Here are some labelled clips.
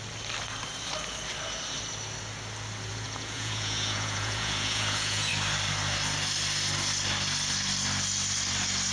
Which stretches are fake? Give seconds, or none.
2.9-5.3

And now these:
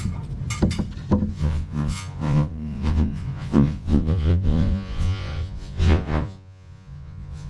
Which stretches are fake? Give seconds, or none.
1.3-7.5

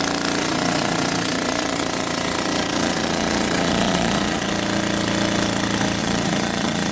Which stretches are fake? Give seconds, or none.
0.4-4.5; 6.0-6.9

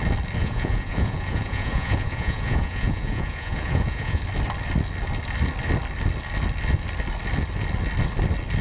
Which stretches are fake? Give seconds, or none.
0.4-4.2

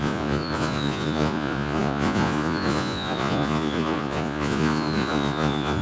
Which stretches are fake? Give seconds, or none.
0.0-5.8

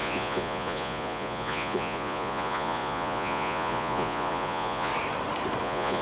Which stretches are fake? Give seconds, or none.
0.0-4.9; 5.6-6.0

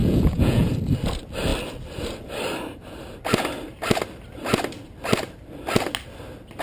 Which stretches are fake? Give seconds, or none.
0.0-0.7

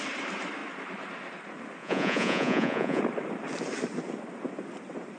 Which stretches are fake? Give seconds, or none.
1.8-3.0